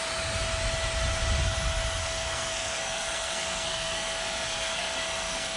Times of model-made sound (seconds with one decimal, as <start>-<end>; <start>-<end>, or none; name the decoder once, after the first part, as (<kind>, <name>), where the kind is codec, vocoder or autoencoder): 2.0-5.6 (codec, SNAC)